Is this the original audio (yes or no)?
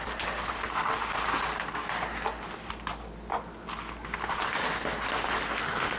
yes